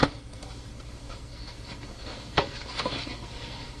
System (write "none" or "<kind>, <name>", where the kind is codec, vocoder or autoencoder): codec, SNAC